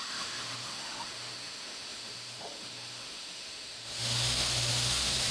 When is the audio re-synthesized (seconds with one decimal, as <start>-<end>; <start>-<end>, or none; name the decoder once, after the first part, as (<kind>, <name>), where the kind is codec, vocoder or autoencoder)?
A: 0.0-5.3 (autoencoder, DAC-VAE)